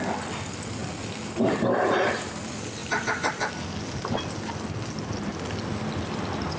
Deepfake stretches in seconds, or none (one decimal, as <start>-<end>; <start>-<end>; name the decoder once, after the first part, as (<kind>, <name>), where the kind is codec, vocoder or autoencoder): 2.8-3.5 (vocoder, BigVGAN v2)